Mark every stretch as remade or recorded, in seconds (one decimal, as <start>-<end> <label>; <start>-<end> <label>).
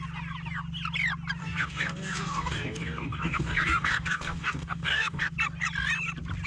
0.0-1.4 recorded; 1.4-5.3 remade; 5.3-6.5 recorded